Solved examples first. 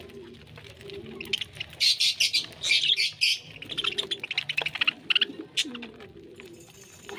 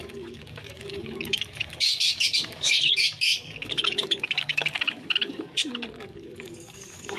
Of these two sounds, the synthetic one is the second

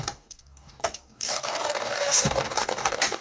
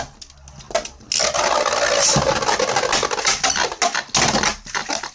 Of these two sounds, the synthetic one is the first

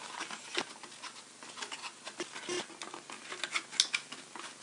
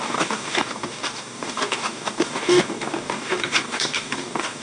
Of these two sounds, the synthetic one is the second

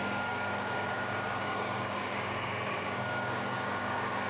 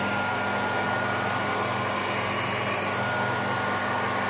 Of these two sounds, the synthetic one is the first